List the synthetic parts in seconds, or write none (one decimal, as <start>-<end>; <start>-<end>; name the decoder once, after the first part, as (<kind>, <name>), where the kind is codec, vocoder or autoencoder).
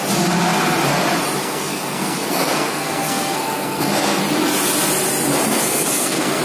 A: 1.4-4.2 (codec, SNAC); 5.5-6.4